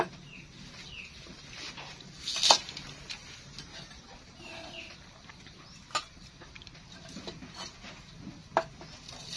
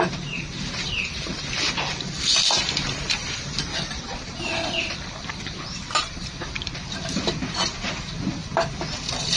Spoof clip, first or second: second